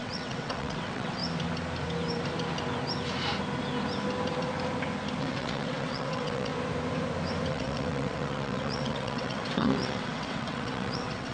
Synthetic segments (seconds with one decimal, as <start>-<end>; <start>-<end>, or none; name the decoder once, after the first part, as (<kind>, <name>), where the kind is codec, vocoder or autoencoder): 0.0-1.2 (vocoder, WaveNeXt); 5.2-6.5; 7.5-11.3